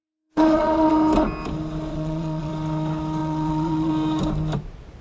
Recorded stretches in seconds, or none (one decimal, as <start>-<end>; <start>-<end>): 0.9-1.9; 2.5-3.2; 3.9-5.0